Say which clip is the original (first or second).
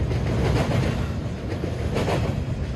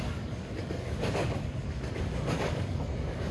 first